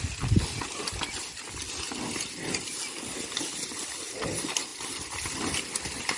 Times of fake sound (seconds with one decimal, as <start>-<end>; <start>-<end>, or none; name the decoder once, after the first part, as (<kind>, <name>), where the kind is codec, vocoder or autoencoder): none